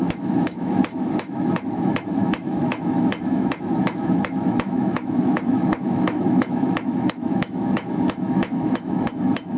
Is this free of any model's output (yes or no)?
no